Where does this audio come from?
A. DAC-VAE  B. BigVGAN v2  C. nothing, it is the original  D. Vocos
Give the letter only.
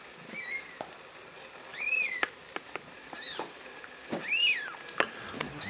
C